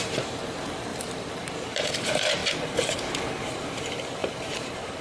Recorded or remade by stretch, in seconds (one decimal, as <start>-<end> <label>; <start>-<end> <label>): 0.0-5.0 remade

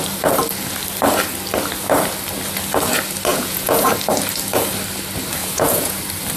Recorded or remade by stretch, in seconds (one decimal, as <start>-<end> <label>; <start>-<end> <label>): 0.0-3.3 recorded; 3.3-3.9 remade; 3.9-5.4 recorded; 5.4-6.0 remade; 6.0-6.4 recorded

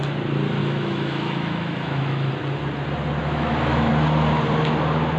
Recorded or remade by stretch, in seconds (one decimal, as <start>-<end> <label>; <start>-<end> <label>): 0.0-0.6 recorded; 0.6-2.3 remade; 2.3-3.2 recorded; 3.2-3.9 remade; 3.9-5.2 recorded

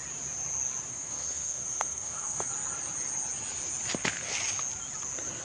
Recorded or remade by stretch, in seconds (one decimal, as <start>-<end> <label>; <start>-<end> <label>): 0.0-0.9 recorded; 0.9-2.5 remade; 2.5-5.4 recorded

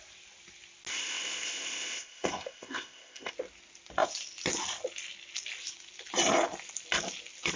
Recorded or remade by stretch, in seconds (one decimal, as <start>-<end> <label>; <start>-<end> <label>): 0.0-0.9 recorded; 0.9-3.3 remade; 3.3-7.6 recorded

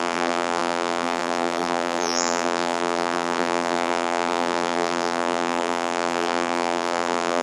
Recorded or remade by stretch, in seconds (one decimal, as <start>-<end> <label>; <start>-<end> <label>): 0.0-7.4 remade

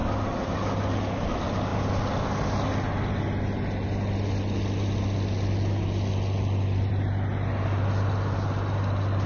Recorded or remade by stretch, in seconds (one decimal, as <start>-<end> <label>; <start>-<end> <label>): 0.0-9.3 recorded

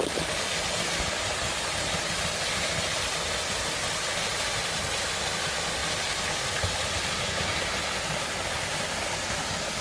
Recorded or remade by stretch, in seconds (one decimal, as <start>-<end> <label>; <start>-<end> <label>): 0.0-9.8 recorded